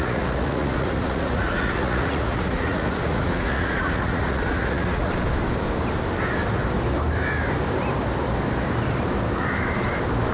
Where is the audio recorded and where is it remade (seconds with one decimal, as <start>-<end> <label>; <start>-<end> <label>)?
0.0-5.1 remade; 5.1-10.3 recorded